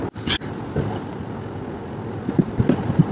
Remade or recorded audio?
recorded